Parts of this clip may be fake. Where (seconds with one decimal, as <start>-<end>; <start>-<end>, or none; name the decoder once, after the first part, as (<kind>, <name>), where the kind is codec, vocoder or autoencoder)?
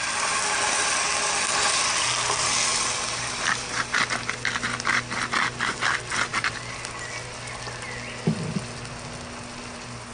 none